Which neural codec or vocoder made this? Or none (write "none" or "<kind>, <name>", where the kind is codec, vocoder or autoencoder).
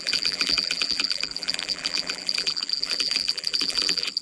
vocoder, BigVGAN v2